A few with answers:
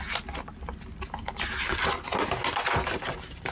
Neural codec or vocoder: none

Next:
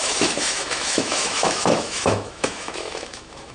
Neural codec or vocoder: autoencoder, DAC-VAE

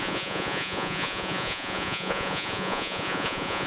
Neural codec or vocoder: vocoder, Vocos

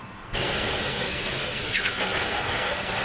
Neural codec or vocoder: codec, SNAC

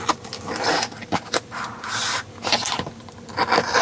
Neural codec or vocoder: none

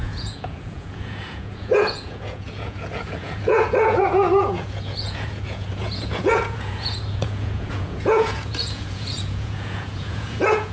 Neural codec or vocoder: vocoder, Vocos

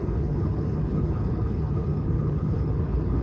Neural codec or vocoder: codec, HILCodec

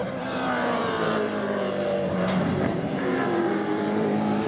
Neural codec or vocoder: vocoder, BigVGAN v2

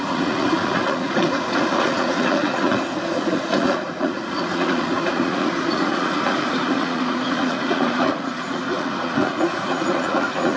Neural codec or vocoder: vocoder, Vocos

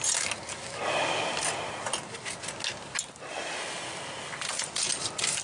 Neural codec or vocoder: none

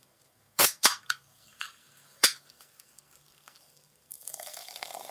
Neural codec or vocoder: codec, SNAC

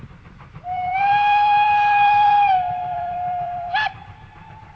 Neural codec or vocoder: vocoder, BigVGAN v2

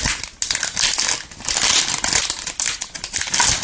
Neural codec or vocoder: none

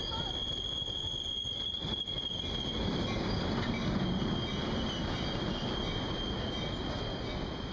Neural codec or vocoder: none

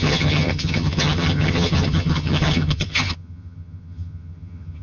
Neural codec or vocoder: vocoder, HiFi-GAN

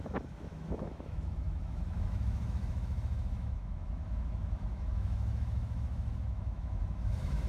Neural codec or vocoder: autoencoder, DAC-VAE